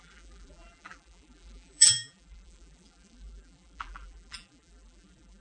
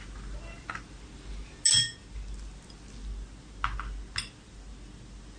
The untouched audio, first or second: second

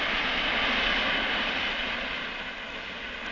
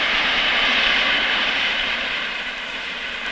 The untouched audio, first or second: first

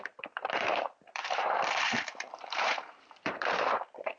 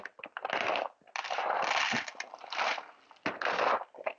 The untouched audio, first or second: second